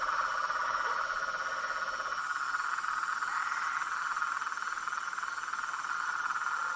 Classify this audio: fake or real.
real